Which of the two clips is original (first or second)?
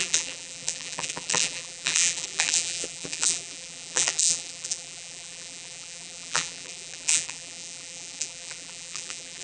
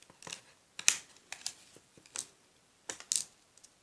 second